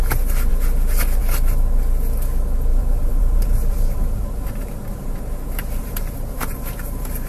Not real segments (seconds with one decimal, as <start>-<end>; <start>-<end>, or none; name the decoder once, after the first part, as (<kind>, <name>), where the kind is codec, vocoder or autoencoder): 2.7-7.3 (vocoder, BigVGAN v2)